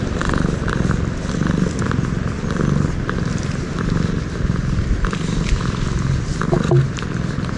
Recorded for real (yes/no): yes